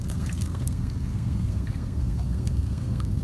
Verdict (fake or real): fake